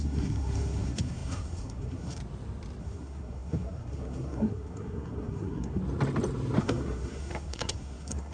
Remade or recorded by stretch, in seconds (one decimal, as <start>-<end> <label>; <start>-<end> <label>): 0.0-2.2 remade; 2.2-2.8 recorded; 2.8-5.8 remade; 5.8-6.6 recorded; 6.6-8.3 remade